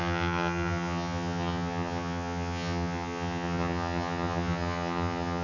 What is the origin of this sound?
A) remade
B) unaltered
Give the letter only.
A